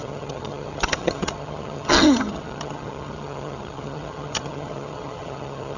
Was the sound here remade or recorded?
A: remade